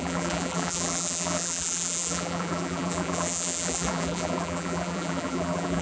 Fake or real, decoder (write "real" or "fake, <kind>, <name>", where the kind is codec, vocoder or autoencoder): fake, vocoder, BigVGAN v2